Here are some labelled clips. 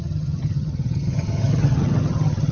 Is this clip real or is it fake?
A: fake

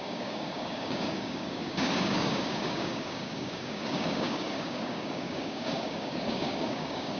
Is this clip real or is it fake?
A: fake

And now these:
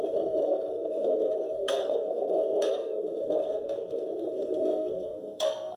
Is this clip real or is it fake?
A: fake